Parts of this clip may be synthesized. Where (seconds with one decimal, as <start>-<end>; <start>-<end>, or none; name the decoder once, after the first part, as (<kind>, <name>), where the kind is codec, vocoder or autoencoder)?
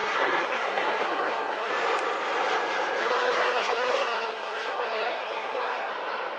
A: 0.0-1.7 (codec, SNAC); 3.0-5.9